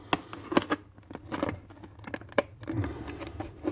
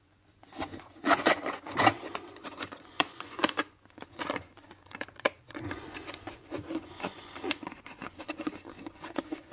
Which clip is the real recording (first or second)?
first